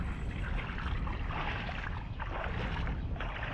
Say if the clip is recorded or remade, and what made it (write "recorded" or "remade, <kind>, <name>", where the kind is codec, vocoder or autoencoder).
recorded